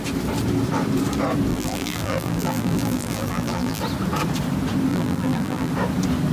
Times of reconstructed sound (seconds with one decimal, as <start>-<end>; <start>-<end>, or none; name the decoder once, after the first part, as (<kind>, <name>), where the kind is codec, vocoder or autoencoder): 1.5-3.8 (vocoder, BigVGAN v2); 4.9-5.7